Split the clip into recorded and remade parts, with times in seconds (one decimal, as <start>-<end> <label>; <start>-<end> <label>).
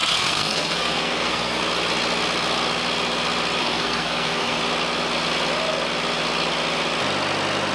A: 0.0-1.6 remade; 1.6-3.6 recorded; 3.6-4.6 remade; 4.6-7.7 recorded